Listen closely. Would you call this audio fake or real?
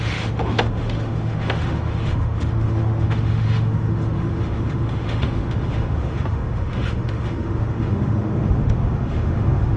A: fake